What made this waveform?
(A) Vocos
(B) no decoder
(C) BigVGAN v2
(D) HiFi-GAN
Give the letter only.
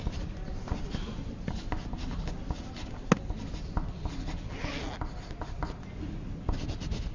B